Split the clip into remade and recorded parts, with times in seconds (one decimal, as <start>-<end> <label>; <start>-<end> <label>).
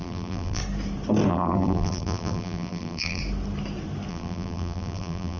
0.0-0.6 remade; 0.6-1.3 recorded; 1.3-3.2 remade; 3.2-4.1 recorded; 4.1-5.4 remade